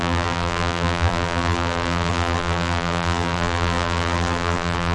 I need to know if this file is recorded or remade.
remade